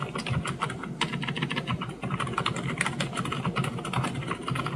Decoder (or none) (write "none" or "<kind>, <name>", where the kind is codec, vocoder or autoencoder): none